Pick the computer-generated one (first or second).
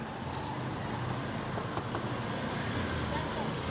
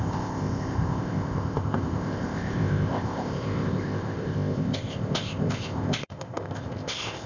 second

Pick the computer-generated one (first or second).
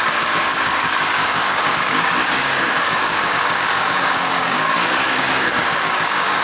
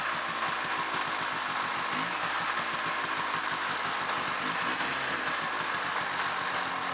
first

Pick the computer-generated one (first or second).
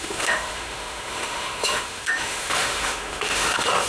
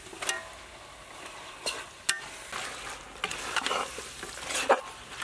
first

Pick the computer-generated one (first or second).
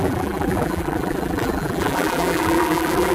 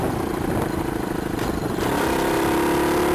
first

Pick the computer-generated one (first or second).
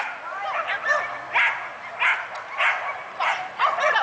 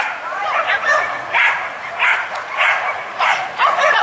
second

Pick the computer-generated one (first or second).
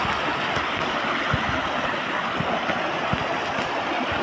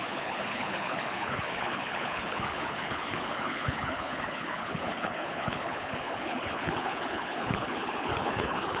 second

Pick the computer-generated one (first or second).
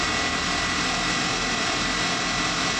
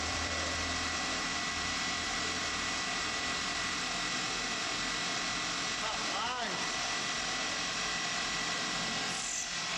second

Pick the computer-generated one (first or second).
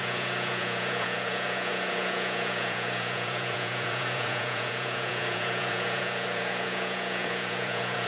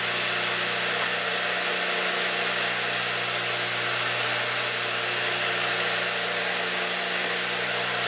first